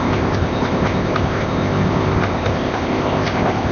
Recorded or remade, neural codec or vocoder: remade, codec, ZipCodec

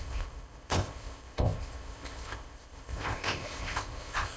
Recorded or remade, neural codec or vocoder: remade, codec, ZipCodec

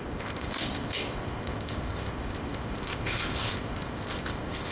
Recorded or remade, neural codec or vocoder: remade, codec, ZipCodec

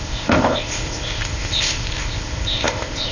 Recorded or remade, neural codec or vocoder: remade, codec, ZipCodec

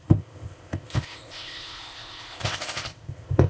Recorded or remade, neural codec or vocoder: remade, codec, ZipCodec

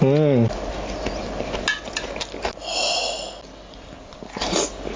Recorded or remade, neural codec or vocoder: recorded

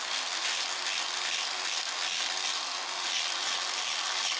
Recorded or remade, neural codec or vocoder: recorded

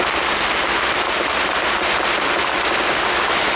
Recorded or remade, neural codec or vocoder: recorded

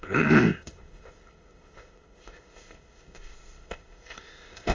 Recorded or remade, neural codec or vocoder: remade, codec, ZipCodec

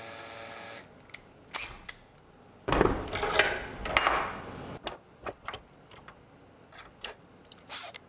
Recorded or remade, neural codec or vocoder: recorded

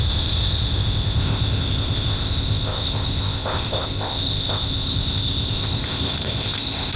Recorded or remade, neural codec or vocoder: remade, codec, ZipCodec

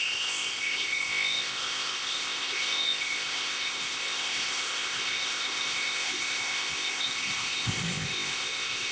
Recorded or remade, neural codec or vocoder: remade, codec, ZipCodec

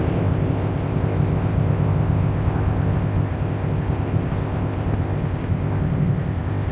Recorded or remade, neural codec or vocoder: remade, codec, ZipCodec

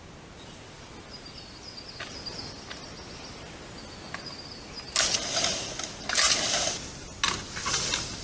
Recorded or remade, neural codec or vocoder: recorded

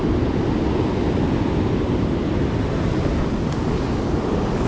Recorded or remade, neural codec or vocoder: recorded